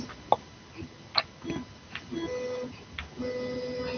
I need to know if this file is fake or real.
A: real